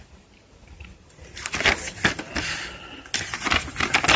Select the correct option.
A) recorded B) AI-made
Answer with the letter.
A